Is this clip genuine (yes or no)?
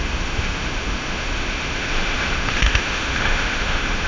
no